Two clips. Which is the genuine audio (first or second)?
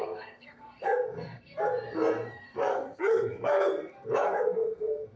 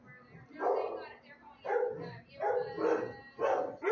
second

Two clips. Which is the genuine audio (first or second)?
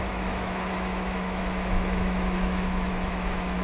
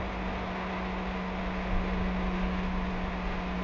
second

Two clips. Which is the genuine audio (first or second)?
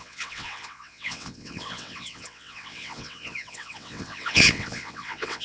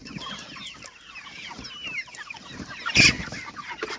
second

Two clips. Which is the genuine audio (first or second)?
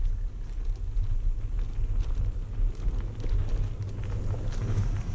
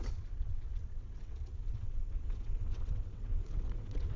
first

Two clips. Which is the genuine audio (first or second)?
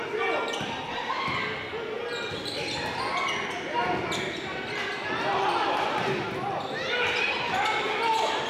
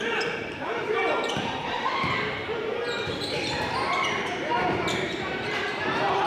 first